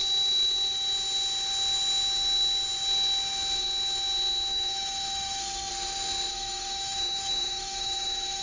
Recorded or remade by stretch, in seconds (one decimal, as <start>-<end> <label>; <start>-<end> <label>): 0.0-4.5 recorded; 4.5-5.7 remade; 5.7-6.3 recorded; 6.3-8.4 remade